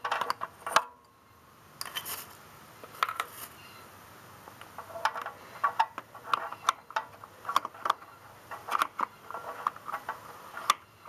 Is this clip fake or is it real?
real